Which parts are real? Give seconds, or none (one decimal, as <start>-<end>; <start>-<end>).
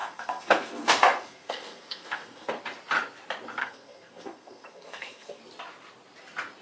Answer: 2.6-3.6; 5.4-6.6